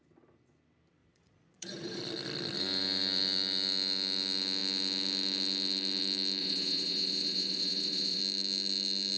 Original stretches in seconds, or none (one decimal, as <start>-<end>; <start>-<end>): 0.0-1.0; 2.0-6.4; 8.2-9.2